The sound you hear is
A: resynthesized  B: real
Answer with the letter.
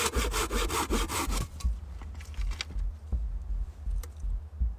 B